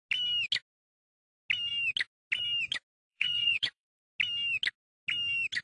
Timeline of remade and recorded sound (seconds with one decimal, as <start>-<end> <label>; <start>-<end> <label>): 0.0-3.1 recorded; 3.1-4.0 remade; 4.0-5.6 recorded